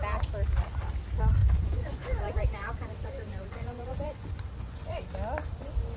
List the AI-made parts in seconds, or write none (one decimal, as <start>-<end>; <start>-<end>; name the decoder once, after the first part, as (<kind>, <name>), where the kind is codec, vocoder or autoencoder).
1.4-5.0 (vocoder, Vocos)